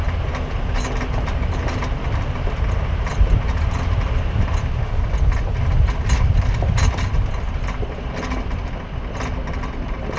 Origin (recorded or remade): recorded